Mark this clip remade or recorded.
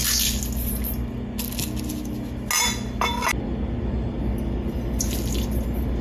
recorded